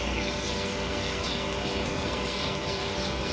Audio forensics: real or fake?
fake